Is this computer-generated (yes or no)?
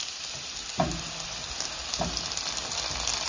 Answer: no